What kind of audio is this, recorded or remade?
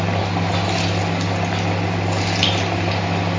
recorded